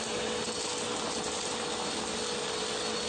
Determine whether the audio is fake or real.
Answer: real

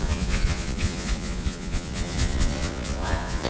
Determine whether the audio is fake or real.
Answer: fake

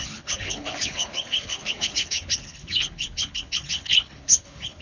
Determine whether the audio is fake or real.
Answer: fake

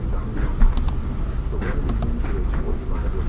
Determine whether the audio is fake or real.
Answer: real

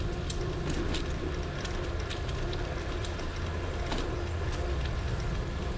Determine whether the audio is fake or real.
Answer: real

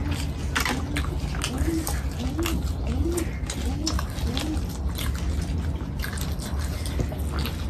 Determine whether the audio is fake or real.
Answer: real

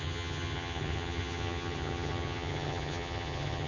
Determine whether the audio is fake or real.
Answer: fake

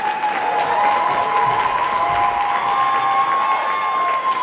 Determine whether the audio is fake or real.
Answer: real